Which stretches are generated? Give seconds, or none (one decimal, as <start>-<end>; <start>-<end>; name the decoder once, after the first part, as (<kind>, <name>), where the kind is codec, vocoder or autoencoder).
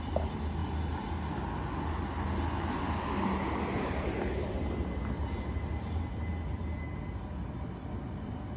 none